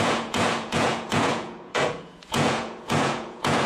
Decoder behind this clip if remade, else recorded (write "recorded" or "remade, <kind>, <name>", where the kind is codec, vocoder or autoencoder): remade, vocoder, Vocos